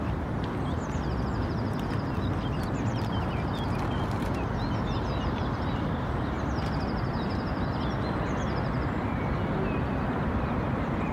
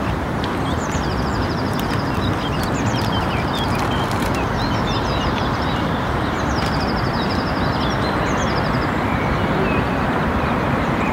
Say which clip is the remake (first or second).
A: second